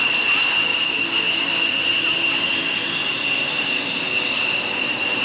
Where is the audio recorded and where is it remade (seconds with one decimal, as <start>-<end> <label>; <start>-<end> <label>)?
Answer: 0.0-5.2 recorded